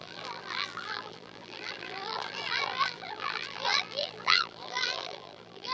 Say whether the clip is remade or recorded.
remade